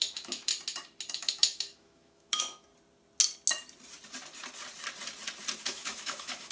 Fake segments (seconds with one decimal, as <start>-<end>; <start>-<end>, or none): 0.0-0.5; 1.1-2.7; 5.6-6.5